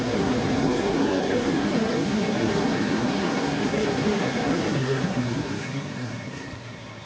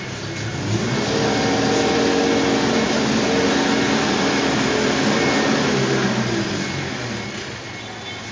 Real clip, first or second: second